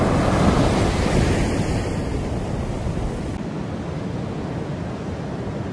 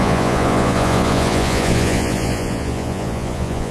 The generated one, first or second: second